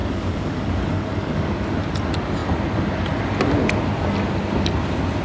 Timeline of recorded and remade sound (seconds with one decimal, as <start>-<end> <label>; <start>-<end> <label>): 0.0-1.5 remade; 1.5-5.2 recorded